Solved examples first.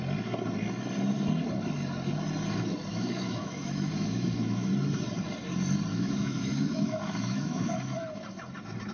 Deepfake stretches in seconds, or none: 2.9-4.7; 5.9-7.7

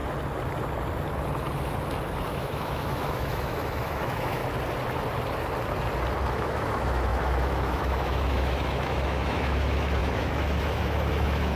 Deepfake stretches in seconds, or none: 2.3-4.4; 6.3-11.6

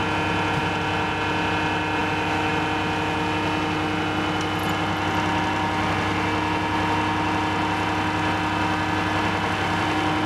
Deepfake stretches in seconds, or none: 2.0-2.5

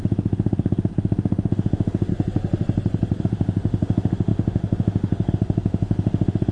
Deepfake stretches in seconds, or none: 0.0-2.1; 3.2-6.5

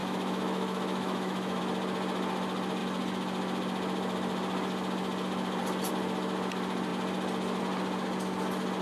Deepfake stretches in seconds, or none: 0.0-1.6

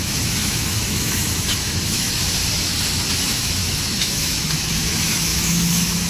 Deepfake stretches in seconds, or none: 0.0-2.4; 3.2-6.1